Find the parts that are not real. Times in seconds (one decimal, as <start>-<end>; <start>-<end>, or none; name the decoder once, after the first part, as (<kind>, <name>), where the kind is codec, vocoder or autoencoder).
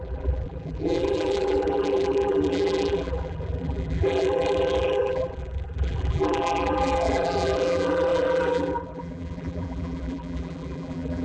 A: 0.0-11.2 (vocoder, BigVGAN v2)